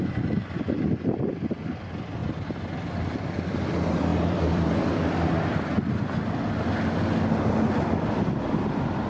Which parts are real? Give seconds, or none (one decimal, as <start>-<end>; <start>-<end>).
0.0-4.1; 5.0-9.1